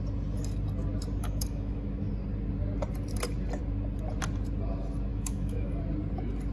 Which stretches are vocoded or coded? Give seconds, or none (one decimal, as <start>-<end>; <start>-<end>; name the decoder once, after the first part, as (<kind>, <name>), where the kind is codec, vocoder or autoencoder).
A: 1.2-2.1 (autoencoder, DAC-VAE); 5.1-5.8